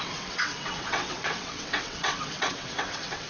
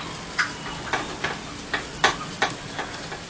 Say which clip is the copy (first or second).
first